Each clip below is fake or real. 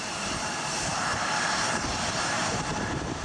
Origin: fake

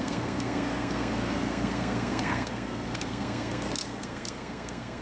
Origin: fake